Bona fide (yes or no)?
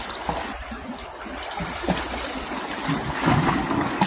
yes